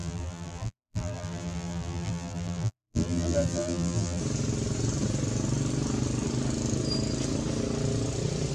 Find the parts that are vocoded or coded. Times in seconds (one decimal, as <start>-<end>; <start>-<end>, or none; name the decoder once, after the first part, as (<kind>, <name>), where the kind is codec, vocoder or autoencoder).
0.0-4.2 (vocoder, BigVGAN v2)